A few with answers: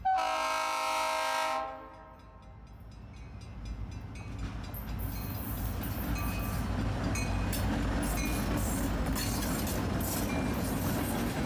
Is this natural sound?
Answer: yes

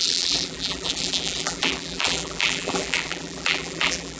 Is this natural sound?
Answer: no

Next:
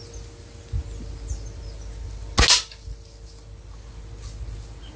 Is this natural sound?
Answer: yes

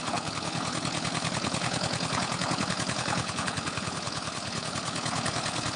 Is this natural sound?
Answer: no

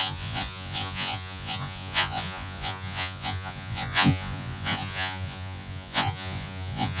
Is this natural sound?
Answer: no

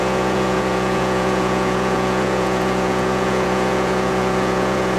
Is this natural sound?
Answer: no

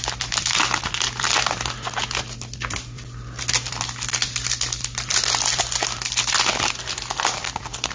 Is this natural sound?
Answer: yes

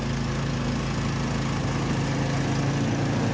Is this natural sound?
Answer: yes